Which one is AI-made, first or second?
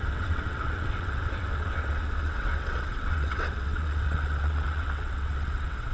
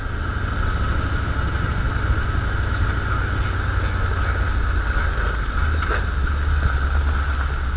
first